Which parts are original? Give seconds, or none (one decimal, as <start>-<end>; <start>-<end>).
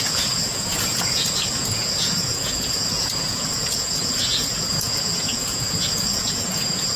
none